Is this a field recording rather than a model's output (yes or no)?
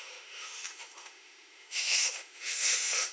no